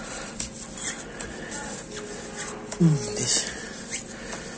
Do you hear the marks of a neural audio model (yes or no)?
no